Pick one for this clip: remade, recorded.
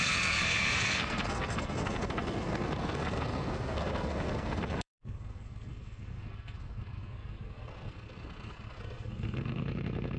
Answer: remade